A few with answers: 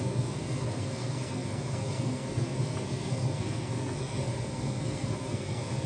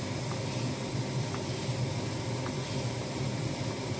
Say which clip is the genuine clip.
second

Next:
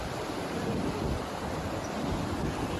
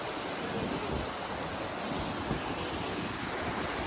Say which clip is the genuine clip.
second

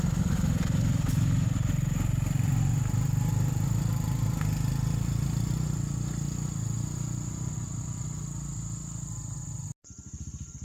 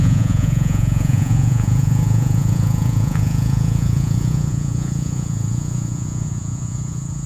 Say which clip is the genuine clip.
first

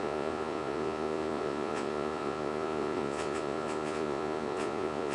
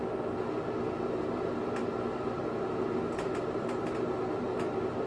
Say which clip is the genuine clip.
second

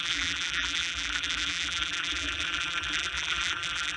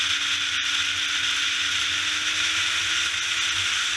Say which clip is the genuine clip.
second